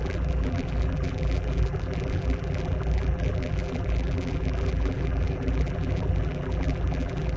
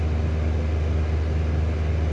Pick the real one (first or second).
second